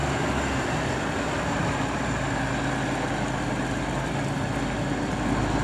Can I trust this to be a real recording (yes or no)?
yes